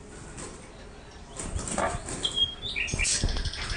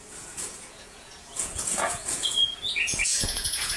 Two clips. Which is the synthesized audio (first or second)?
second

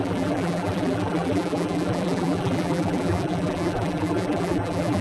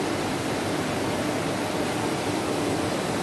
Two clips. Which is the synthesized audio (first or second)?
first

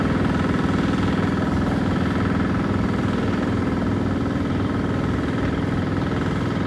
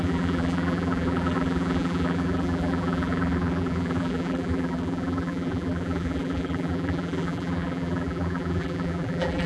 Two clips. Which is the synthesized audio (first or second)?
second